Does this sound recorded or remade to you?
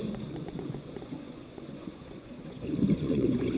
remade